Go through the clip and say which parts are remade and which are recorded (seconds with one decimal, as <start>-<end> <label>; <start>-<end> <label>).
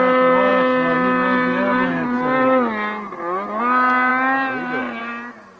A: 0.0-5.6 recorded